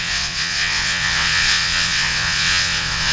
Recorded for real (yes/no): no